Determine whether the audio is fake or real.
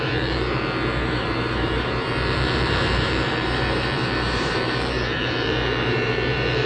fake